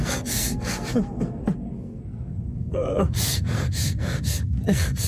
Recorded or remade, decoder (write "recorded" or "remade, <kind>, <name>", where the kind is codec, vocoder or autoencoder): remade, codec, SNAC